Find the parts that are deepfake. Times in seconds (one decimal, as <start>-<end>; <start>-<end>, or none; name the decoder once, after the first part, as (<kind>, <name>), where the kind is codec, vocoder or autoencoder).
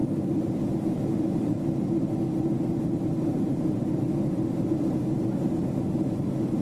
none